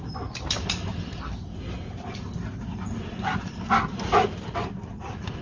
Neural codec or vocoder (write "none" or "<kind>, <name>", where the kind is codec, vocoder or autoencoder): none